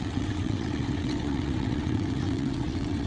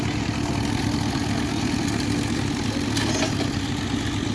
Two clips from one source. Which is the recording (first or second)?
second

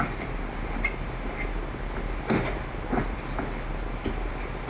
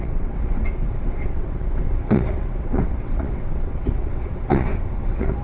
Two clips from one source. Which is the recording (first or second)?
first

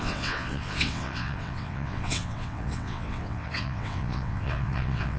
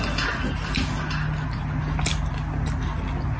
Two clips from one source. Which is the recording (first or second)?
second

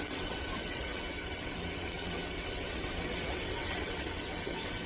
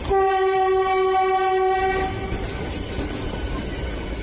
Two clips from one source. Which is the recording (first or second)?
second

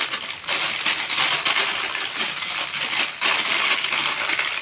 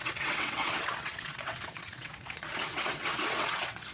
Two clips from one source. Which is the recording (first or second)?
first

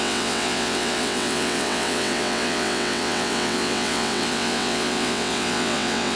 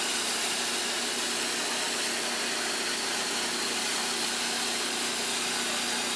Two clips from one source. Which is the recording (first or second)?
second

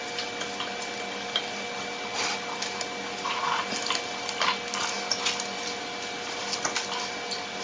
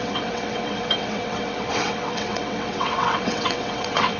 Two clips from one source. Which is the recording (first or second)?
first